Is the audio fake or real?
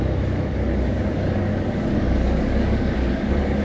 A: fake